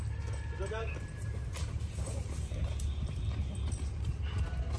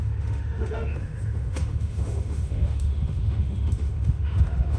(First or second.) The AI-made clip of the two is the second